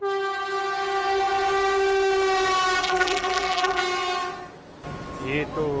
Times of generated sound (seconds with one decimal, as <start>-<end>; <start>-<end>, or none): 2.8-3.8